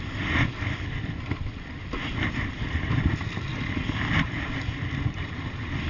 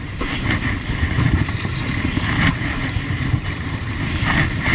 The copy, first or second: second